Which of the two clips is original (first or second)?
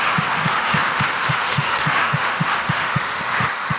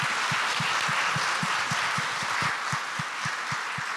second